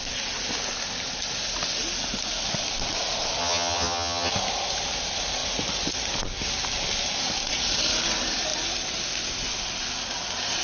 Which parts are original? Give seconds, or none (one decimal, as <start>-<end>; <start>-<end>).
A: 0.0-3.4; 4.3-10.6